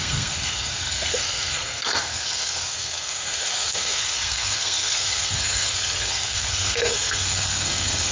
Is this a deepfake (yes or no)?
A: yes